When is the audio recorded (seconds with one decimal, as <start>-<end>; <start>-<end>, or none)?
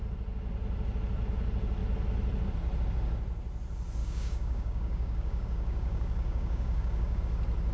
0.0-4.0; 7.2-7.7